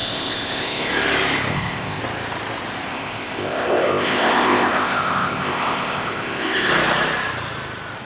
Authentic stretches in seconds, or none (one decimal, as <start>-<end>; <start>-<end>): 0.9-1.5; 2.0-2.9; 6.7-8.1